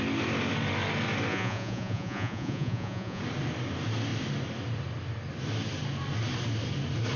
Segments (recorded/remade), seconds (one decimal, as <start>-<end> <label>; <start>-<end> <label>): 0.0-1.3 recorded; 1.3-3.2 remade; 3.2-7.2 recorded